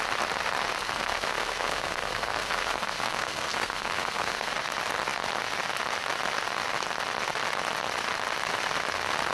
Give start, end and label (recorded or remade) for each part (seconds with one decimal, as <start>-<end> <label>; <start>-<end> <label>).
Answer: 0.0-0.8 recorded; 0.8-4.5 remade; 4.5-9.3 recorded